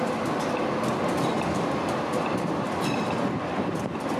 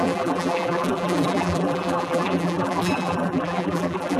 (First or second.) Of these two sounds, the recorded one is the first